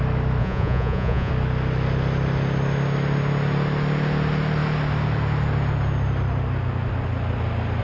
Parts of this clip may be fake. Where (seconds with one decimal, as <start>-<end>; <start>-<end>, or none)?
0.4-1.3